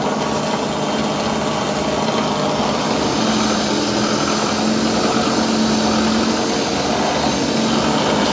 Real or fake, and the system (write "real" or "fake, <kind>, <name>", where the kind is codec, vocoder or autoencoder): real